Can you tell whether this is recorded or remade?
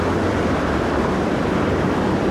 remade